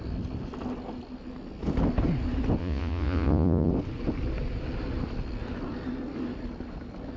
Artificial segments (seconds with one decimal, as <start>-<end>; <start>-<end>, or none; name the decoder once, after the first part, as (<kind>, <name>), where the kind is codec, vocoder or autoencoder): 2.6-3.7 (vocoder, Vocos)